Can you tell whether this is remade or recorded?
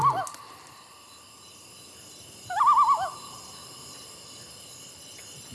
recorded